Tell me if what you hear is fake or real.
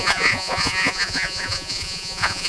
fake